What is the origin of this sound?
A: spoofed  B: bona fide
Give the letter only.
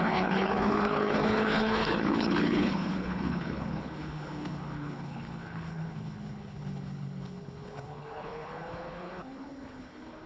A